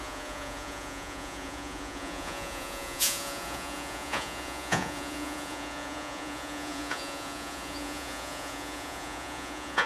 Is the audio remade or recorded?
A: remade